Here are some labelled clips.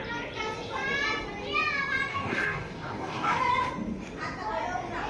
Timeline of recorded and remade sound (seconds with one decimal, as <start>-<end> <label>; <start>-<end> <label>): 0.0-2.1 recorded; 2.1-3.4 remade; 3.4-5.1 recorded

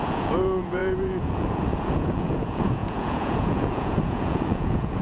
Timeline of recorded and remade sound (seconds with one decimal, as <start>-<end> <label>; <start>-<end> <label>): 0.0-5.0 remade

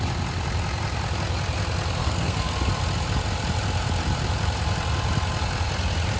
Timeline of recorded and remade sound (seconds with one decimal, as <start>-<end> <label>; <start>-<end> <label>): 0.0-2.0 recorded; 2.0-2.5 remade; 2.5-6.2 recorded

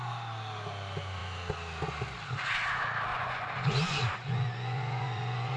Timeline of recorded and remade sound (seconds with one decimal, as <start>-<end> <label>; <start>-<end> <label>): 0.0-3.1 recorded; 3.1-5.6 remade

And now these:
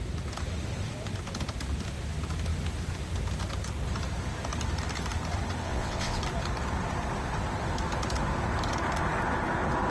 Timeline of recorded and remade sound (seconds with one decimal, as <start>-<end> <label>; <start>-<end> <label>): 0.0-5.6 recorded; 5.6-6.2 remade; 6.2-9.9 recorded

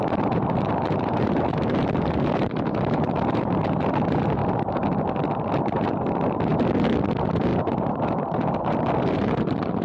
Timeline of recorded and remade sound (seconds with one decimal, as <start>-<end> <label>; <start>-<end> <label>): 0.0-4.4 remade; 4.4-5.6 recorded; 5.6-6.5 remade; 6.5-7.1 recorded; 7.1-9.8 remade

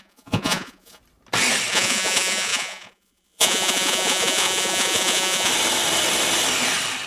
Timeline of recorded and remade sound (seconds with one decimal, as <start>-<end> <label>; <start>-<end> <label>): 0.0-1.0 remade; 1.0-1.7 recorded; 1.7-5.5 remade; 5.5-7.1 recorded

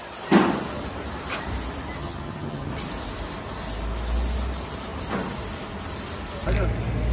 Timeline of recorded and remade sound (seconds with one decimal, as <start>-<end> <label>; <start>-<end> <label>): 0.0-2.0 recorded; 2.0-2.7 remade; 2.7-7.1 recorded